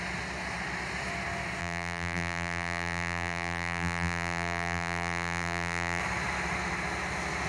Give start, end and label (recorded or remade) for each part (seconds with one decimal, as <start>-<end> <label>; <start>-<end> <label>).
0.0-1.6 recorded; 1.6-6.0 remade; 6.0-7.5 recorded